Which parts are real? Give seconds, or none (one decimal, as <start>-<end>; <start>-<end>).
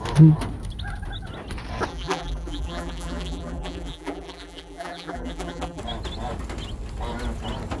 0.0-1.9; 5.8-7.8